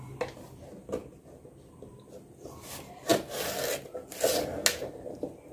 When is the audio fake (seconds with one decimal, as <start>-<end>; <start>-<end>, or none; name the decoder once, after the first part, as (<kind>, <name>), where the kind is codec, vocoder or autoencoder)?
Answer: none